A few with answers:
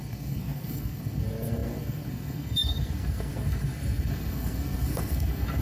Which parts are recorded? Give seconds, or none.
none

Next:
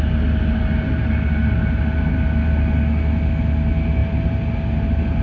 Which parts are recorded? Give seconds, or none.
0.0-5.2

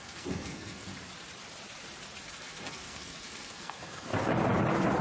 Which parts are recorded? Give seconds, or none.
0.9-2.3; 4.1-5.0

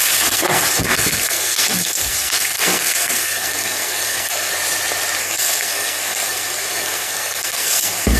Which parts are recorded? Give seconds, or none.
4.5-5.2

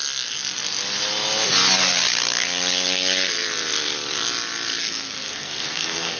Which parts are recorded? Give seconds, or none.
0.0-4.8

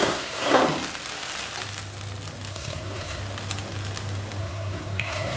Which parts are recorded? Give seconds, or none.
0.6-2.5; 3.2-4.4